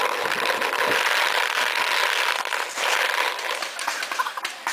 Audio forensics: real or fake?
real